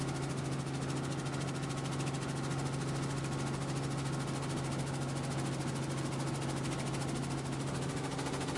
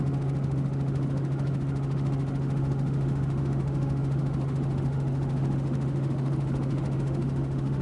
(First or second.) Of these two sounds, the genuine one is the first